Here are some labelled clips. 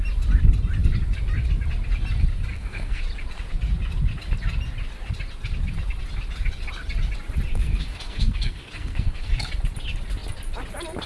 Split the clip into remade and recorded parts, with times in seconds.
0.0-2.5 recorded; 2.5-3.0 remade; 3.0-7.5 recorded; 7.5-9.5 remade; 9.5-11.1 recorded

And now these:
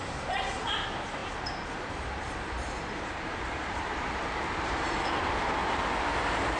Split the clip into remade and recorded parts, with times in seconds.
0.0-1.2 recorded; 1.2-5.1 remade; 5.1-5.6 recorded; 5.6-6.6 remade

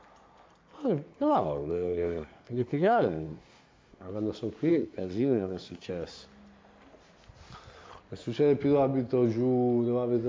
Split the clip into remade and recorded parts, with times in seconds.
0.0-1.1 recorded; 1.1-4.1 remade; 4.1-4.7 recorded; 4.7-5.9 remade; 5.9-10.3 recorded

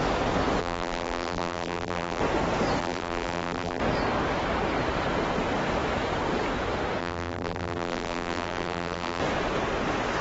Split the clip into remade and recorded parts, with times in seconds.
0.0-0.6 recorded; 0.6-2.2 remade; 2.2-2.8 recorded; 2.8-3.8 remade; 3.8-7.0 recorded; 7.0-9.2 remade; 9.2-10.2 recorded

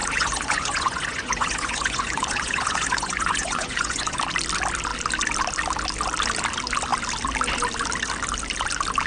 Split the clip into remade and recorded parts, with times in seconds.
0.0-4.2 remade; 4.2-9.1 recorded

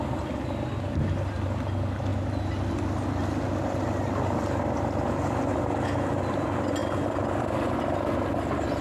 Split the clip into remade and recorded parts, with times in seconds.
0.0-8.8 recorded

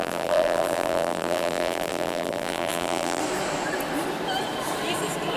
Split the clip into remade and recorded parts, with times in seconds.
0.0-3.2 remade; 3.2-5.4 recorded